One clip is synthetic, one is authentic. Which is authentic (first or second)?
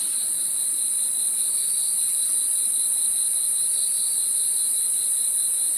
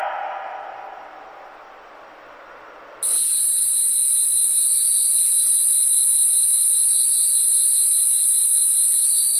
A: second